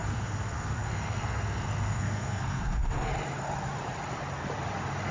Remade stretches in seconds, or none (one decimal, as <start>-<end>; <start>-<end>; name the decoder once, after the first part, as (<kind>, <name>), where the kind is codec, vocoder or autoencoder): 0.0-3.1 (codec, SNAC)